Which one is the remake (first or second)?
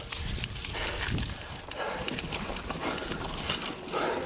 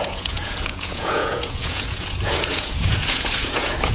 second